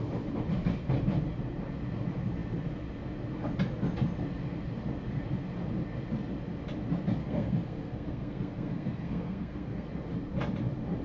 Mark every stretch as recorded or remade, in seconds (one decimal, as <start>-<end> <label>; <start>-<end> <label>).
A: 0.0-7.2 recorded; 7.2-9.9 remade; 9.9-11.0 recorded